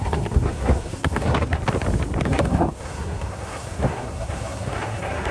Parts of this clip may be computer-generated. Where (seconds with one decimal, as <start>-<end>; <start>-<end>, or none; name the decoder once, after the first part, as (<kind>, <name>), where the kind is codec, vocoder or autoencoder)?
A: 0.0-1.6 (codec, SNAC); 2.2-5.3